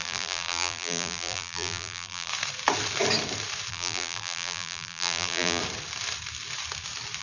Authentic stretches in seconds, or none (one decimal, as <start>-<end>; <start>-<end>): 2.3-3.7; 5.6-7.2